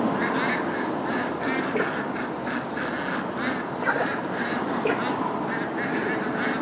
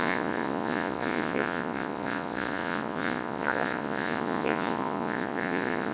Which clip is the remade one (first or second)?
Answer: second